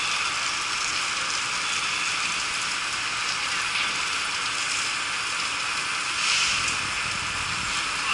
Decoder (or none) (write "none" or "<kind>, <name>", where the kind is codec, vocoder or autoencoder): none